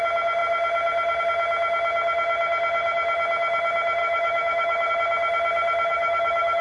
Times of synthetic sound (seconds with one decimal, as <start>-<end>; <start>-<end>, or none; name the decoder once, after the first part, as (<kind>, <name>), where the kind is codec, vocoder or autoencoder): 4.0-4.9 (autoencoder, DAC-VAE); 5.9-6.6